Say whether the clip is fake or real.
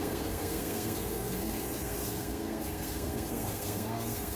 fake